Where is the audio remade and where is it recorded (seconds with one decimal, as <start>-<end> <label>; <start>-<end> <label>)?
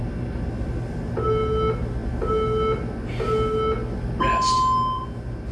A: 0.0-5.5 recorded